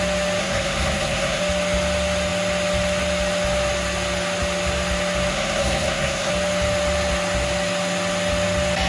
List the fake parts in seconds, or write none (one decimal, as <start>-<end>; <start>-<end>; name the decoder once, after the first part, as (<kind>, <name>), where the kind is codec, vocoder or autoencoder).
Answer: 0.4-1.4 (codec, SNAC); 5.3-6.3